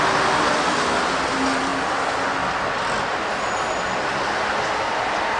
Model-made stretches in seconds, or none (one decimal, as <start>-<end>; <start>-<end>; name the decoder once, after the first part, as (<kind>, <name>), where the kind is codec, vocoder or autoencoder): none